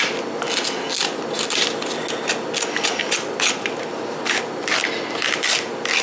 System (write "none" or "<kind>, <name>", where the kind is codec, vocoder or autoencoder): none